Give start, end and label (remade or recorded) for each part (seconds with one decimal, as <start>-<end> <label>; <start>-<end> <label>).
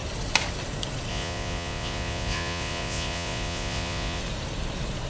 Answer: 0.0-1.1 recorded; 1.1-4.2 remade; 4.2-5.1 recorded